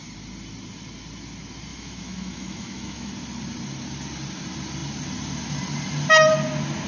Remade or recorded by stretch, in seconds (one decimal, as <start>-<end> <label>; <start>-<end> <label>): 0.0-1.7 recorded; 1.7-3.1 remade; 3.1-6.9 recorded